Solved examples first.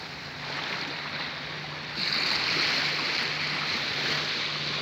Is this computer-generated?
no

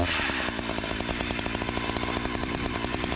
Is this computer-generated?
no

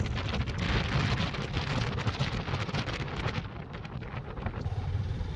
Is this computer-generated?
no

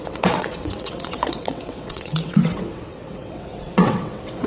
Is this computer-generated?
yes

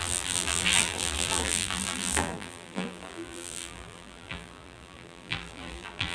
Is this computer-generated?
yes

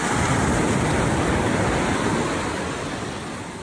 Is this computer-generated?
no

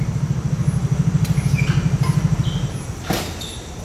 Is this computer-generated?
no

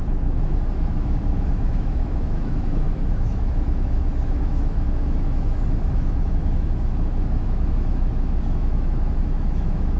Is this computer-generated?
yes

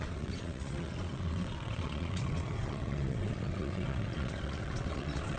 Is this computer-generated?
yes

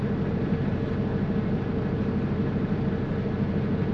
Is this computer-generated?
no